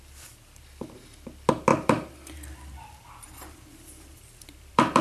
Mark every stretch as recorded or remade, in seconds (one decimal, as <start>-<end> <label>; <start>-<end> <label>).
0.0-1.7 recorded; 1.7-5.0 remade